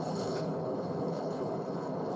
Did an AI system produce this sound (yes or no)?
yes